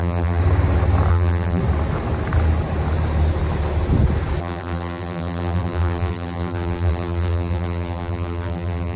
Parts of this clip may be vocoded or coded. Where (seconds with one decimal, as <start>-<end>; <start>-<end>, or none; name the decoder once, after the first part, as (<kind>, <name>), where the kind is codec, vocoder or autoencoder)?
0.0-0.4 (vocoder, BigVGAN v2); 1.1-1.6; 4.4-9.0